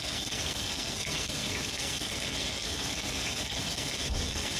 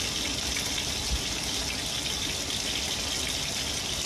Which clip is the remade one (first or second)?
first